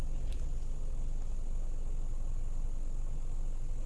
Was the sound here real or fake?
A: real